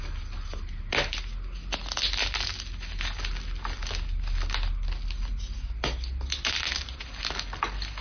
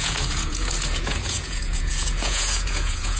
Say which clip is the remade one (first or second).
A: second